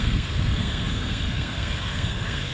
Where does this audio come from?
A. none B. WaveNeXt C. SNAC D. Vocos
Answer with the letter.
C